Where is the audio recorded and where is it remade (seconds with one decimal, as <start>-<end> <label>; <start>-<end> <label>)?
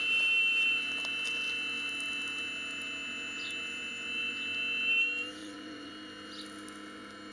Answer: 0.0-5.4 recorded; 5.4-5.9 remade; 5.9-7.3 recorded